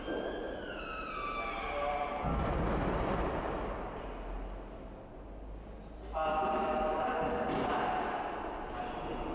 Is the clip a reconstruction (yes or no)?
no